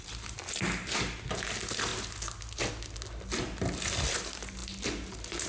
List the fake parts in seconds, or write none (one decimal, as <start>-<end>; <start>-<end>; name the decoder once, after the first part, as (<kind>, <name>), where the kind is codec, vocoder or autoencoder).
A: none